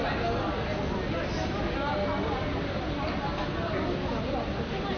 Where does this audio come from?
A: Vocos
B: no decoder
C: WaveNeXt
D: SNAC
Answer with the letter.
B